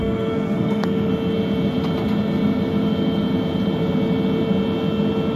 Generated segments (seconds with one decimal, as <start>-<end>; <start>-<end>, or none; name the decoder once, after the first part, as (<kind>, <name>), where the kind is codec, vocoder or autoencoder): 0.0-1.1 (codec, SNAC)